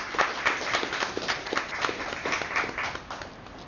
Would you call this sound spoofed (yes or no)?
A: no